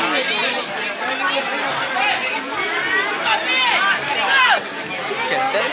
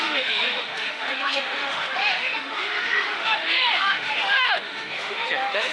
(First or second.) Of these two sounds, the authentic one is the first